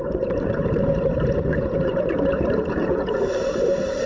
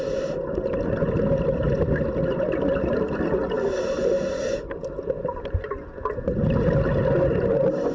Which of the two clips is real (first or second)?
second